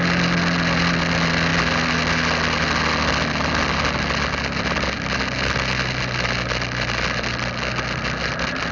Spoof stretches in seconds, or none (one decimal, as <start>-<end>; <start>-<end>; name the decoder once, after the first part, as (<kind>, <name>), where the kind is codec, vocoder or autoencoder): none